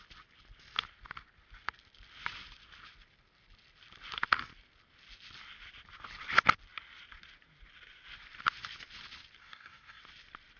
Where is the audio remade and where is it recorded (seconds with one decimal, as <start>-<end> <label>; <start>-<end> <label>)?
0.0-9.4 recorded; 9.4-10.0 remade; 10.0-10.6 recorded